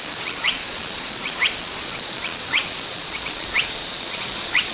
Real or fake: fake